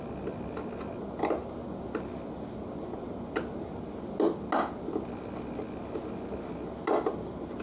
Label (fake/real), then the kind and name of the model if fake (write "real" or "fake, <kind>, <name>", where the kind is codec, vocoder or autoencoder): real